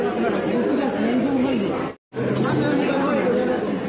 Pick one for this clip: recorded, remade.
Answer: recorded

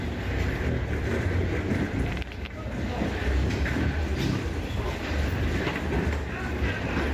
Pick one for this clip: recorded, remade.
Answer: recorded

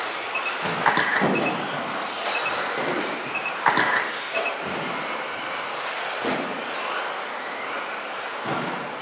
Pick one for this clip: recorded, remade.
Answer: recorded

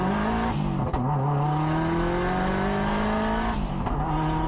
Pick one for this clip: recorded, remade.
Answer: recorded